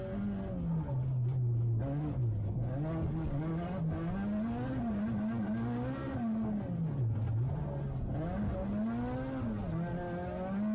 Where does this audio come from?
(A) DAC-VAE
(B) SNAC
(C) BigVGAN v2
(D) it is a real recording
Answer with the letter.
D